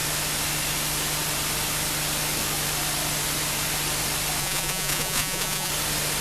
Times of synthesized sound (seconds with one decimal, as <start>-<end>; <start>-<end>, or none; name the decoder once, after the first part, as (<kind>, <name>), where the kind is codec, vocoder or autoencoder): 4.4-5.7 (vocoder, Vocos)